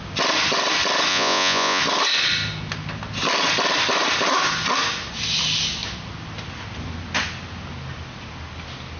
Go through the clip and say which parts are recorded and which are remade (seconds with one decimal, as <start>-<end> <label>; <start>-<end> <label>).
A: 0.0-1.1 recorded; 1.1-1.8 remade; 1.8-9.0 recorded